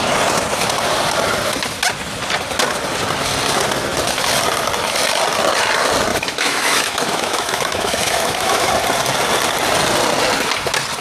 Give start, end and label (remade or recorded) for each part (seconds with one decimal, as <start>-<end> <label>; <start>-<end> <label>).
0.0-6.1 recorded; 6.1-8.7 remade; 8.7-11.0 recorded